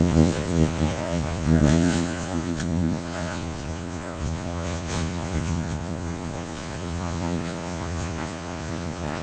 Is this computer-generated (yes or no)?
yes